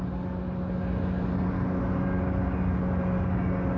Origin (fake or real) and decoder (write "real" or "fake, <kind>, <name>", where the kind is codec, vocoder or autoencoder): real